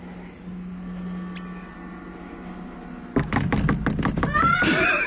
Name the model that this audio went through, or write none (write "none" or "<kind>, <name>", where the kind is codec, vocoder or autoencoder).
none